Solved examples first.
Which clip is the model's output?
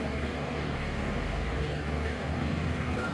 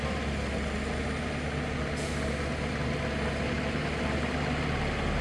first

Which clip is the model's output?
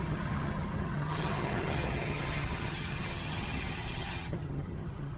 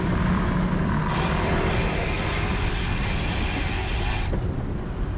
first